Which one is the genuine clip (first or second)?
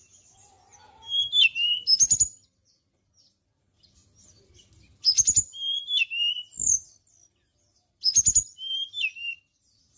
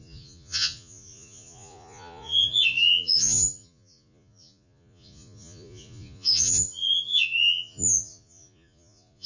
first